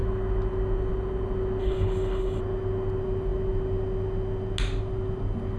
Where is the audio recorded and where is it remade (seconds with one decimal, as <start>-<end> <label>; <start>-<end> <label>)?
0.0-1.6 recorded; 1.6-2.4 remade; 2.4-5.6 recorded